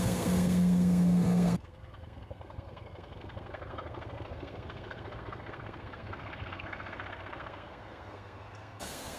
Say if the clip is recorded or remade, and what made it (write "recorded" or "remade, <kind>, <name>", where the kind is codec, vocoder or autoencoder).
remade, codec, SNAC